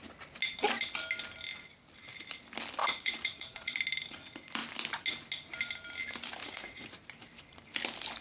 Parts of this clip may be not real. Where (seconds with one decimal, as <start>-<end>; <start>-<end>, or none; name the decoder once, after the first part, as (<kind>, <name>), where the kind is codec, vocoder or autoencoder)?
2.8-3.8 (vocoder, Vocos); 6.4-6.9